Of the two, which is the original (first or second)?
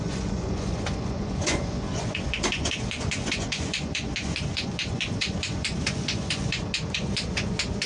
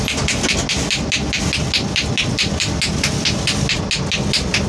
second